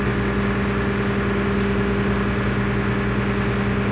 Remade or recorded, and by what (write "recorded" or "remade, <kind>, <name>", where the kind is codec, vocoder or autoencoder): recorded